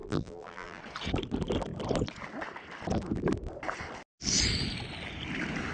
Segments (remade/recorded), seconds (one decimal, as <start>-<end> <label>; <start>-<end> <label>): 0.0-0.8 remade; 0.8-5.7 recorded